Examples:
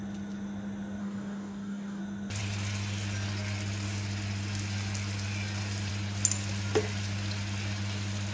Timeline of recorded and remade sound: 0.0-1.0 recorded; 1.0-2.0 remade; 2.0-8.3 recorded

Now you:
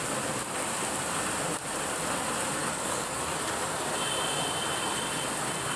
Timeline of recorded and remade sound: 0.0-2.6 recorded; 2.6-3.2 remade; 3.2-5.8 recorded